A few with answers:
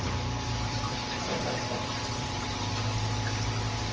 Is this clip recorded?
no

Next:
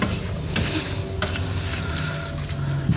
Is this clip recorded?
yes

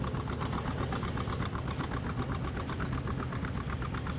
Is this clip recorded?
yes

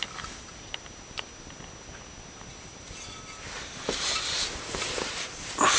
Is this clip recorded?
yes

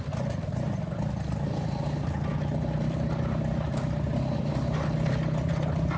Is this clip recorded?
yes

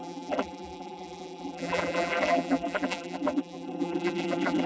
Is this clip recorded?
no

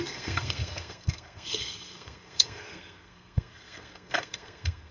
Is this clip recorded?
no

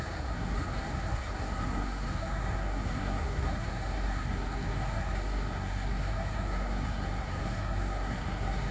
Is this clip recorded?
no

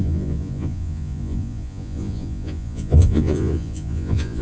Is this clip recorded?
no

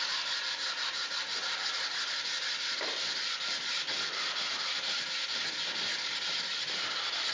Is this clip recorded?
yes